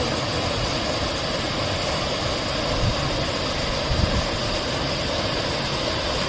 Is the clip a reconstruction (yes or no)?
no